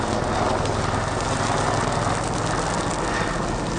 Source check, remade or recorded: recorded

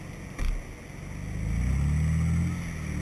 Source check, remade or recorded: recorded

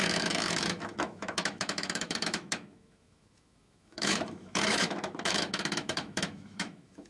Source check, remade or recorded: remade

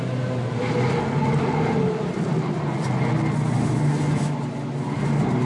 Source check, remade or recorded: recorded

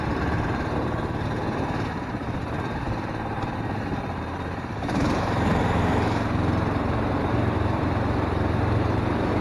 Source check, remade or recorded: remade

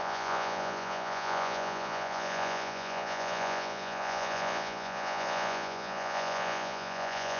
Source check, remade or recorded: remade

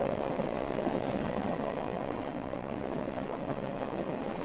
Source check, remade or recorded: remade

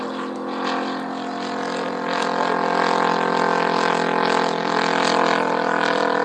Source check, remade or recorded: recorded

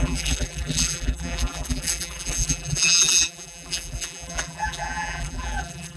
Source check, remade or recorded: remade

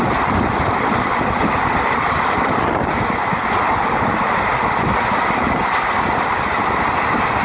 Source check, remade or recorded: recorded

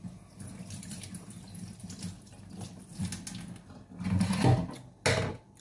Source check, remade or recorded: recorded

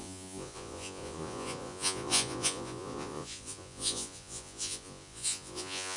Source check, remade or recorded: remade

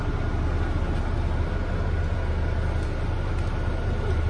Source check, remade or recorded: recorded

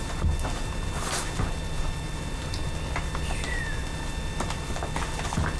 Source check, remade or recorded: recorded